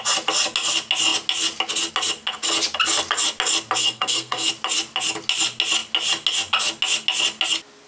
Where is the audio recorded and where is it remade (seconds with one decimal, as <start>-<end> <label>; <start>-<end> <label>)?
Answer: 0.0-3.8 recorded; 3.8-4.5 remade; 4.5-7.9 recorded

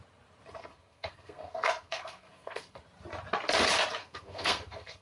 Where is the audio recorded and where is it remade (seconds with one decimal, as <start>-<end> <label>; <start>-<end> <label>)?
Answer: 0.0-0.6 recorded; 0.6-2.8 remade; 2.8-4.0 recorded; 4.0-5.0 remade

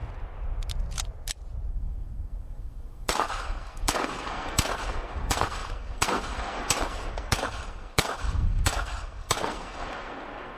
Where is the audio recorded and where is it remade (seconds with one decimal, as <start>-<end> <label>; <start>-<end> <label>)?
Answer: 0.0-1.7 recorded; 1.7-10.6 remade

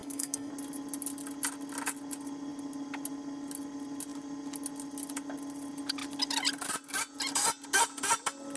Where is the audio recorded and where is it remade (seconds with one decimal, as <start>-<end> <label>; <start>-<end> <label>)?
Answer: 0.0-0.5 remade; 0.5-8.6 recorded

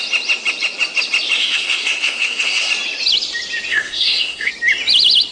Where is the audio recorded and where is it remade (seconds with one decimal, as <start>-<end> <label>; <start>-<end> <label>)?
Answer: 0.0-1.4 recorded; 1.4-2.7 remade; 2.7-3.7 recorded; 3.7-4.5 remade; 4.5-5.3 recorded

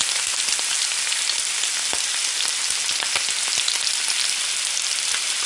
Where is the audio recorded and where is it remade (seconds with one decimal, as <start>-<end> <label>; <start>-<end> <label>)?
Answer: 0.0-5.5 recorded

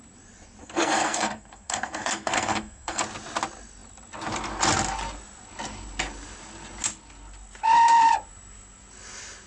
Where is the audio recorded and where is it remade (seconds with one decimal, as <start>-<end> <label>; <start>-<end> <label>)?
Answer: 0.0-0.6 recorded; 0.6-3.0 remade; 3.0-9.5 recorded

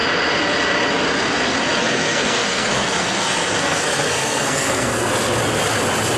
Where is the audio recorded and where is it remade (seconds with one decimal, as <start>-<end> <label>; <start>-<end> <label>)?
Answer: 0.0-1.8 recorded; 1.8-5.1 remade; 5.1-6.2 recorded